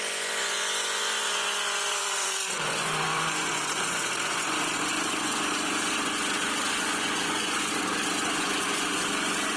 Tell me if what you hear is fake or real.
fake